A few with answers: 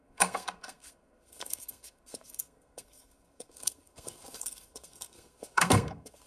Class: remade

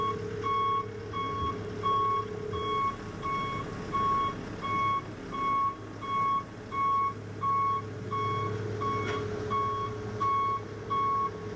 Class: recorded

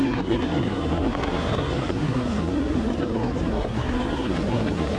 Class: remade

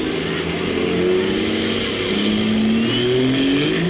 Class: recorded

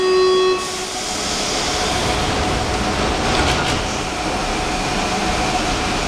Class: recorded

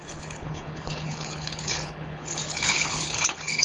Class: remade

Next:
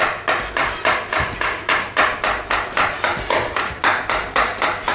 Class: recorded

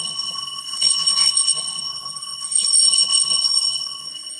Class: remade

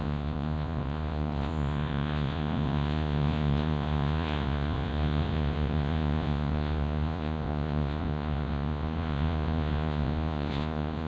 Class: remade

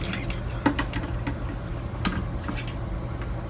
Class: recorded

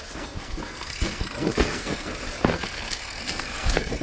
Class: remade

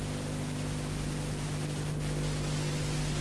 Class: remade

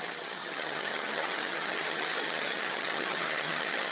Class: remade